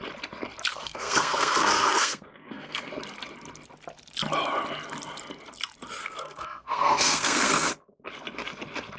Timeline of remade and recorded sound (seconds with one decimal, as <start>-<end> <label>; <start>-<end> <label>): 0.0-0.7 recorded; 0.7-2.9 remade; 2.9-6.0 recorded; 6.0-7.7 remade; 7.7-9.0 recorded